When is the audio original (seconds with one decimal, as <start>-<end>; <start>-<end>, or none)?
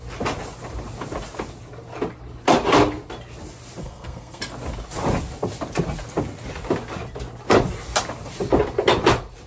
0.0-3.8; 4.4-9.5